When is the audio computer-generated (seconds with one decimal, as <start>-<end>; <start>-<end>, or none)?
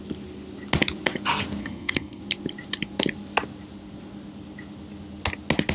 1.6-2.2